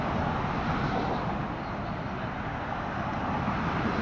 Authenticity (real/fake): real